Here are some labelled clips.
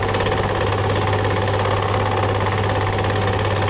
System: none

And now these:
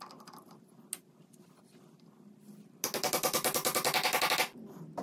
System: none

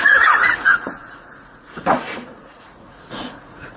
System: vocoder, Vocos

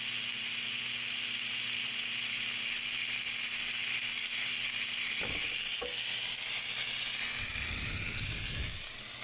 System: none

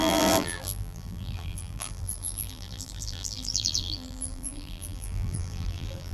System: vocoder, BigVGAN v2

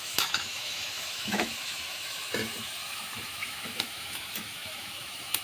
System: autoencoder, DAC-VAE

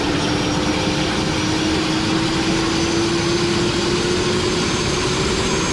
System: none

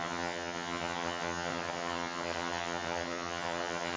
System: vocoder, HiFi-GAN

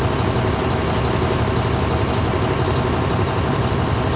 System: none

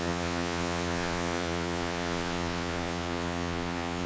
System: vocoder, Vocos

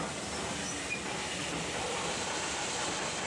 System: none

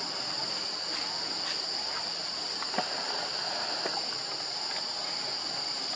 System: none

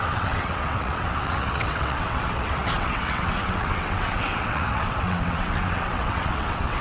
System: vocoder, WaveNeXt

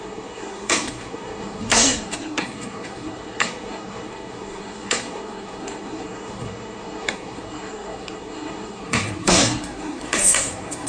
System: codec, SNAC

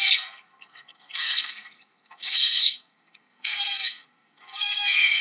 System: codec, SNAC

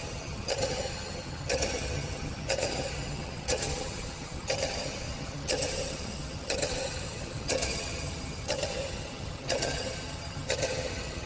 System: vocoder, HiFi-GAN